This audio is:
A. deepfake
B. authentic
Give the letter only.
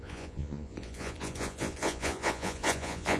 A